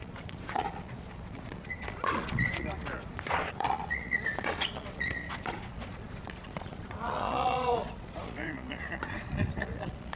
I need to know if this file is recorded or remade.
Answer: remade